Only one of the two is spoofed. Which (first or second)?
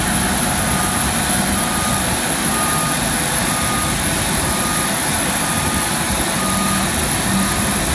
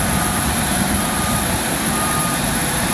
second